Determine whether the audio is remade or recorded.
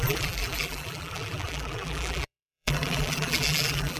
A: remade